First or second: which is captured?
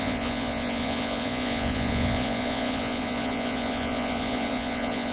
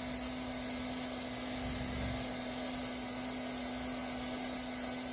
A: second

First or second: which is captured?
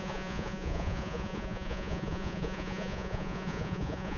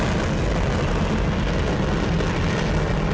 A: second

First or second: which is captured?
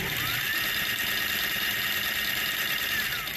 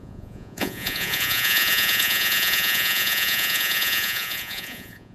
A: first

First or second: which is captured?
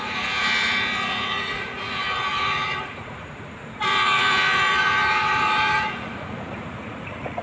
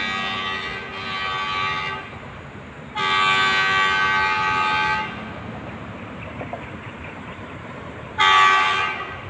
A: second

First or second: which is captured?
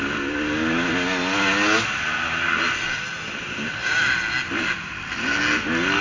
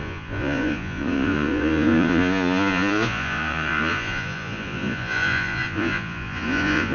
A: first